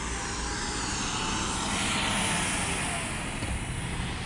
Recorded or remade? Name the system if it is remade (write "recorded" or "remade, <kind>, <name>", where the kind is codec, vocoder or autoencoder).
recorded